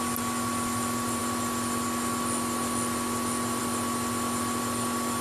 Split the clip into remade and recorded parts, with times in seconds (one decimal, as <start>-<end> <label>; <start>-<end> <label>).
0.0-5.2 recorded